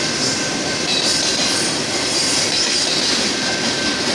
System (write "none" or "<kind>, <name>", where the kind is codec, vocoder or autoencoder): vocoder, BigVGAN v2